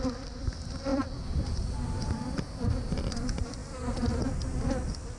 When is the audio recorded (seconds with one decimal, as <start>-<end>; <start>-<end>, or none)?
3.6-5.2